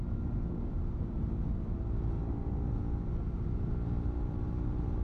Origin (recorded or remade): recorded